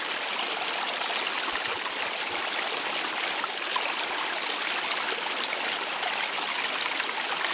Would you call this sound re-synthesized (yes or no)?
no